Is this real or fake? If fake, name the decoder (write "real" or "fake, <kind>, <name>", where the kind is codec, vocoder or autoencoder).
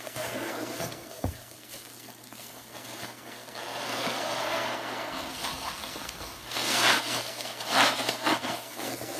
fake, codec, SNAC